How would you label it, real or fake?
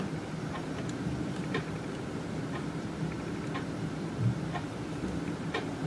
fake